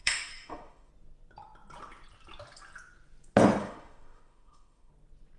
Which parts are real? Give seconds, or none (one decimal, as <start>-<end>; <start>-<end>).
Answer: 0.9-3.6; 4.9-5.4